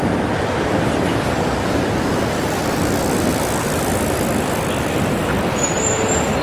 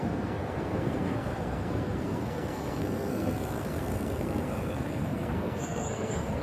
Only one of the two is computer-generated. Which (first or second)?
second